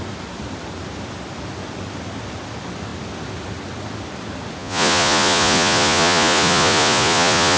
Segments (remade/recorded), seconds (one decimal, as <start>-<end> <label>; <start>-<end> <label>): 0.0-4.6 recorded; 4.6-7.6 remade